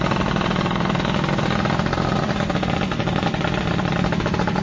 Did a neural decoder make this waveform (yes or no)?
no